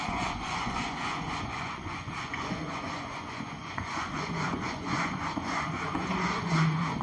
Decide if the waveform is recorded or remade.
remade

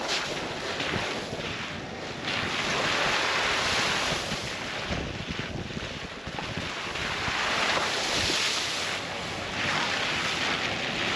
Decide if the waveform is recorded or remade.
recorded